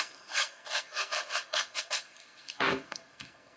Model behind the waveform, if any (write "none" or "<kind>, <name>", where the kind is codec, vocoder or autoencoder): codec, SNAC